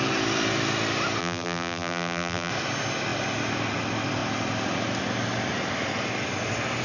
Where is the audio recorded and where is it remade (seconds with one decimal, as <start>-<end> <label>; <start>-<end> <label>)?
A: 0.0-1.2 recorded; 1.2-2.5 remade; 2.5-6.8 recorded